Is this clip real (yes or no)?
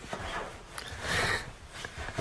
yes